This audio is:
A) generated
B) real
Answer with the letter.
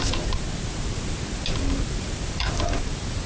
B